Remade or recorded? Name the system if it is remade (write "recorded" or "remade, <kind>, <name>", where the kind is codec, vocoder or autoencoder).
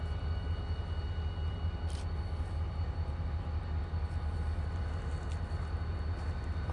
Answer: recorded